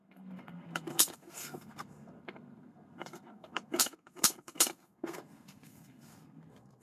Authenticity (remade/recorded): remade